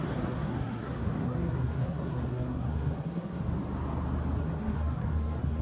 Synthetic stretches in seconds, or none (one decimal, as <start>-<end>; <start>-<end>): 0.0-3.4; 4.4-5.6